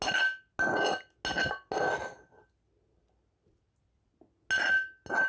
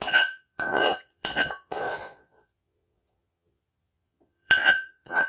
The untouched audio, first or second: first